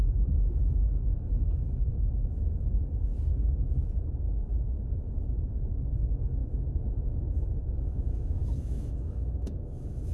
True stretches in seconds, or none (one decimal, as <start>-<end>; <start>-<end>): 3.1-5.1